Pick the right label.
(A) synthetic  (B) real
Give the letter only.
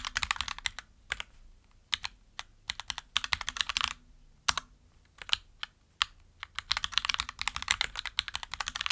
B